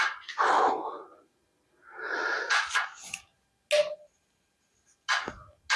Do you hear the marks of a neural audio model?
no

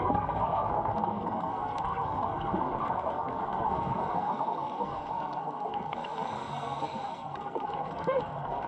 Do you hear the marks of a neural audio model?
yes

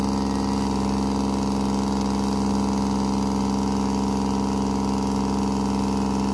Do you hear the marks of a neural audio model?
no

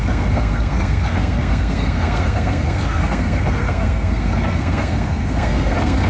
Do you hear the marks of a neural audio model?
yes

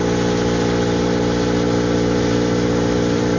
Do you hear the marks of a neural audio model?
yes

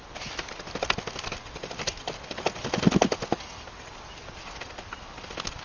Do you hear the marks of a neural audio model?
no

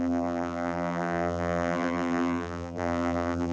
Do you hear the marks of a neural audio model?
yes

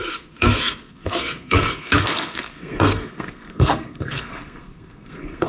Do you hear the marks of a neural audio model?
yes